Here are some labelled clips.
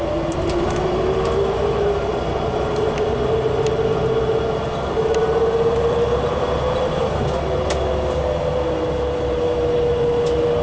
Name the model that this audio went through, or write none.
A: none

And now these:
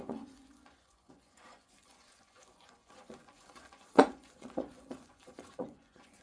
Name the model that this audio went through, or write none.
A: vocoder, Vocos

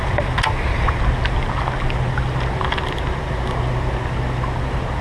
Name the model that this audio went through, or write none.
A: none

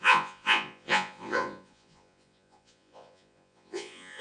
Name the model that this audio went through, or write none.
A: vocoder, Vocos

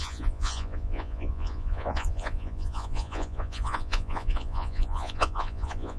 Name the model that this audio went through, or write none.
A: vocoder, Vocos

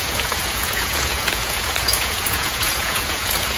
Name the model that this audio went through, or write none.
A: vocoder, Vocos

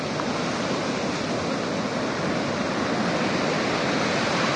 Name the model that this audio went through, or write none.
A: none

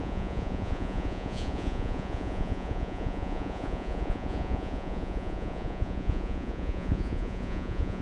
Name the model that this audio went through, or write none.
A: vocoder, Vocos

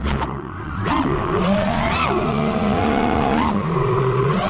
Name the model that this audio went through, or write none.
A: vocoder, Vocos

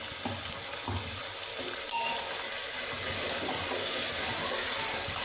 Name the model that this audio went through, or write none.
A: none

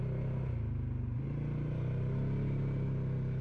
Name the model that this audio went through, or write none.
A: none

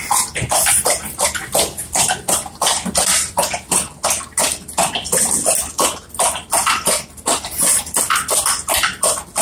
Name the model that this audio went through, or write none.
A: none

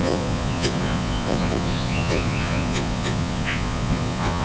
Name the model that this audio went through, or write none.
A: vocoder, Vocos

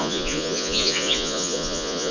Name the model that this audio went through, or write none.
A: vocoder, Vocos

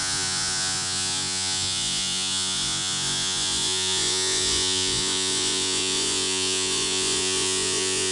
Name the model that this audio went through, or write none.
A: vocoder, Vocos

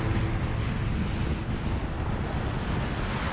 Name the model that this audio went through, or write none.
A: none